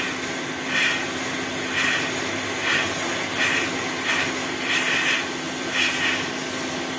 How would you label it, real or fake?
real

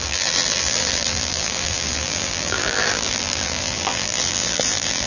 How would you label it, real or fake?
fake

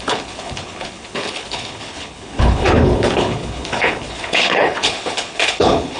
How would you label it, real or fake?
fake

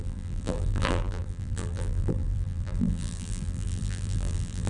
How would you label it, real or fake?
fake